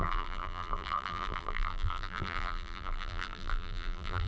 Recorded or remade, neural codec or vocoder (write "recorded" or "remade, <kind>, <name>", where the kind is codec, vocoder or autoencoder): remade, vocoder, BigVGAN v2